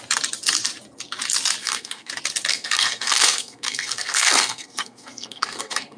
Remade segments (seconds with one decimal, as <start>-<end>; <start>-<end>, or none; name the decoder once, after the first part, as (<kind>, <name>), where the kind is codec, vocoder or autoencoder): 1.6-2.1 (codec, SNAC); 2.5-6.0